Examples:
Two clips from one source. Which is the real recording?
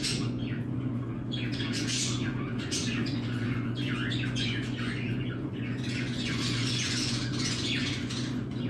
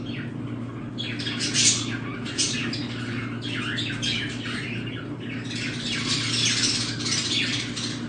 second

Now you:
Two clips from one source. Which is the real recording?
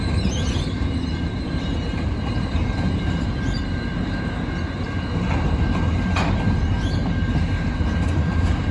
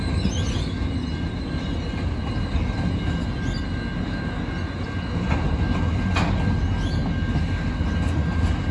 second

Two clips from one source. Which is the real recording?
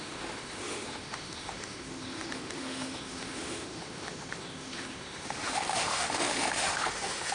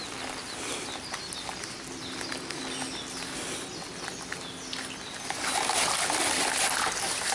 second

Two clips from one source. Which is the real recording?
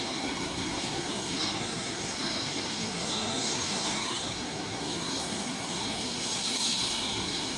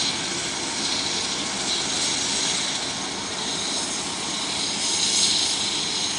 second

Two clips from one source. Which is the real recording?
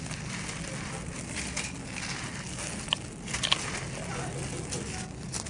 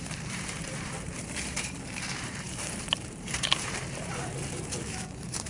first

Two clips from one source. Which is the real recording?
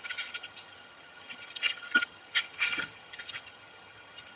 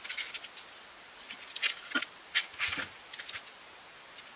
second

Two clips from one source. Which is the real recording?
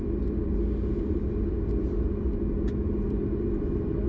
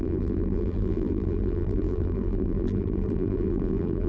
first